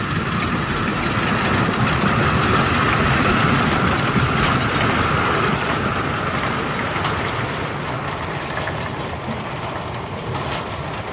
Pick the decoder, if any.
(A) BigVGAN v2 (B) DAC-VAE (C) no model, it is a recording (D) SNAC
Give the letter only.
C